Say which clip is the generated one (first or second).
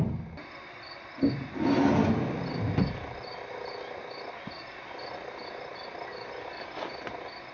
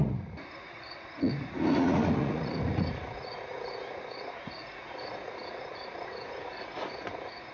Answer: second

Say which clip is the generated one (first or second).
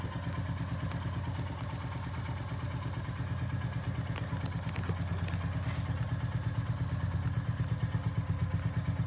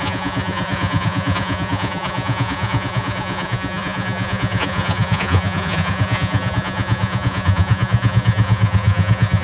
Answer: second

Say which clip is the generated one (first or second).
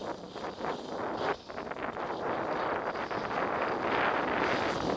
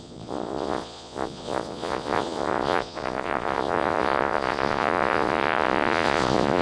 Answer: second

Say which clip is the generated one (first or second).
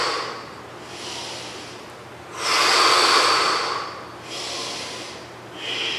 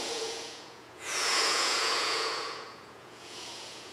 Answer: second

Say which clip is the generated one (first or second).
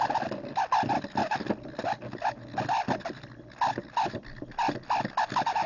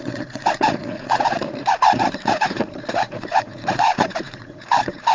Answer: second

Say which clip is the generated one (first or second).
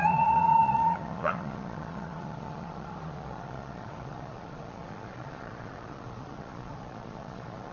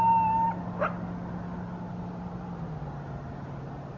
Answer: first